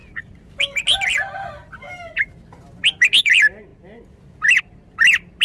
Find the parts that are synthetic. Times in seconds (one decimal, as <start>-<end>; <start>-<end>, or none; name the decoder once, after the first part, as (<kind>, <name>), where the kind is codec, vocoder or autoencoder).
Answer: none